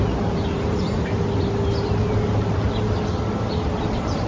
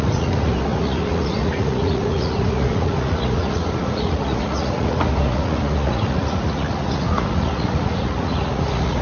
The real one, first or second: first